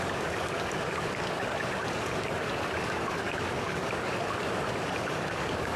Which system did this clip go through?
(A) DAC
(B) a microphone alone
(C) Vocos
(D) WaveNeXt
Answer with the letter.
A